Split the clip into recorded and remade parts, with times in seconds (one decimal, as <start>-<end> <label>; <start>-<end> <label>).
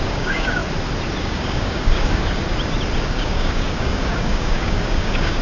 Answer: 0.0-0.6 remade; 0.6-1.2 recorded; 1.2-2.4 remade; 2.4-3.1 recorded; 3.1-5.4 remade